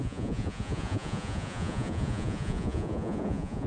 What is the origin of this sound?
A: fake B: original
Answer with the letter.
A